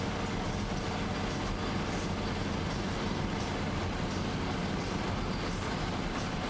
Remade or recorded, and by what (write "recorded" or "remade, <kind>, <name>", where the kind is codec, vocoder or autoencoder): recorded